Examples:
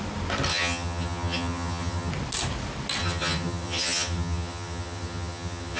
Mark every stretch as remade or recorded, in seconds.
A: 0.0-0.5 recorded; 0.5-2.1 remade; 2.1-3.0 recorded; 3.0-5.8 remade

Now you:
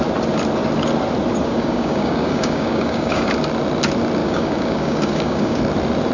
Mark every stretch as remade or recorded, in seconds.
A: 0.0-1.4 recorded; 1.4-3.3 remade; 3.3-4.2 recorded; 4.2-5.6 remade; 5.6-6.1 recorded

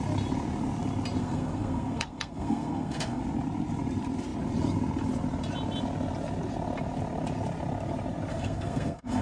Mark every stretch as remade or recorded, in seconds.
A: 0.0-1.2 recorded; 1.2-3.2 remade; 3.2-8.3 recorded; 8.3-9.2 remade